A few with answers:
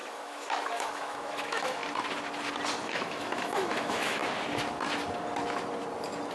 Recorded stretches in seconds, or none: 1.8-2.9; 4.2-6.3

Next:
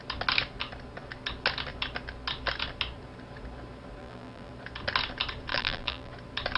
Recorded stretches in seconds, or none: 0.0-4.0; 4.5-5.5; 6.1-6.6

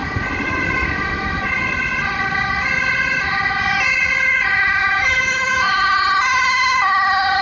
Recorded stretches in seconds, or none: 0.0-4.8; 5.7-7.4

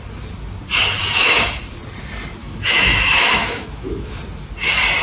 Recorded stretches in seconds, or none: 0.0-1.0; 1.6-2.4; 4.2-5.0

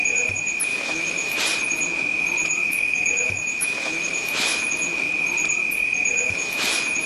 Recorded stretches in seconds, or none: 0.0-0.7; 1.4-2.4; 5.1-6.1

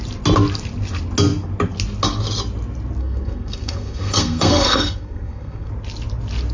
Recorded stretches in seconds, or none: 0.0-3.0; 5.7-6.5

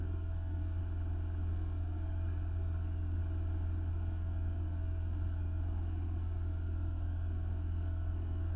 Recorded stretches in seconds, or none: 0.8-1.5; 3.2-3.9